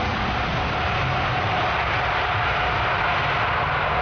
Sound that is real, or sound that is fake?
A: real